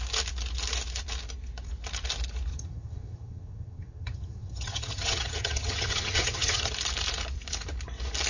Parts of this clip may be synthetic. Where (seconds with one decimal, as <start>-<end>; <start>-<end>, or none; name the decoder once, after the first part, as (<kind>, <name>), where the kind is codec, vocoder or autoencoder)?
2.5-6.7 (vocoder, HiFi-GAN)